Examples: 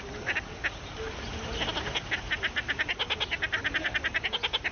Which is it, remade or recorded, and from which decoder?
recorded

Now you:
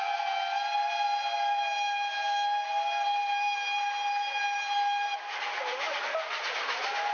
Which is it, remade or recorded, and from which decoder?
recorded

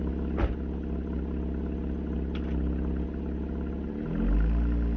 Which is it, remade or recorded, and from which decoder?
recorded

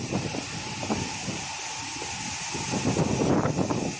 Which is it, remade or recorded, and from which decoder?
recorded